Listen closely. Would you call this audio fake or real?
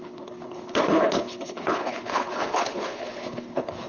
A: fake